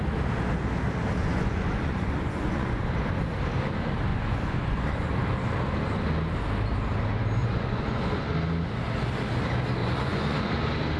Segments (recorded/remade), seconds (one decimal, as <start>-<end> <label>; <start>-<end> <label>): 0.0-1.2 recorded; 1.2-2.9 remade; 2.9-4.1 recorded; 4.1-5.1 remade; 5.1-7.4 recorded; 7.4-8.3 remade; 8.3-9.8 recorded; 9.8-10.5 remade; 10.5-11.0 recorded